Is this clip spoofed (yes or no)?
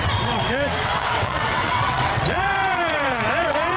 yes